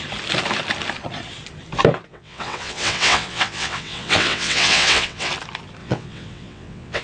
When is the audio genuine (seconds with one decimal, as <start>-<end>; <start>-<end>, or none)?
0.0-2.1; 5.3-5.8